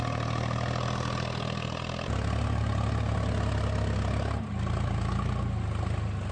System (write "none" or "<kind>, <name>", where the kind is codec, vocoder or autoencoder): none